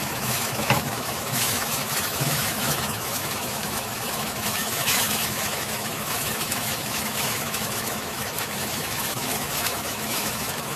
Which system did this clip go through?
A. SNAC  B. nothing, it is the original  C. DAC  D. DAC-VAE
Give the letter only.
D